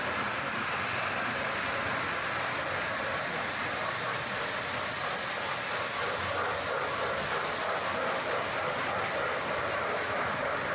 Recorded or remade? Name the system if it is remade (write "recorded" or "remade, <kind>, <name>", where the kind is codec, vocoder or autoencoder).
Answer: recorded